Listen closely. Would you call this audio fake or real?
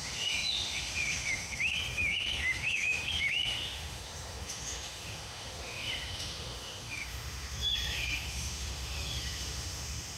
fake